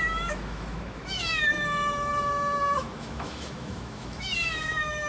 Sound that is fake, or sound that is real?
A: fake